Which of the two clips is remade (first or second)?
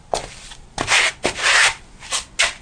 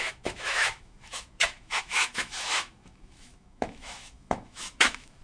second